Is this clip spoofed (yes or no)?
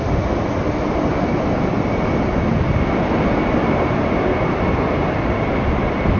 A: no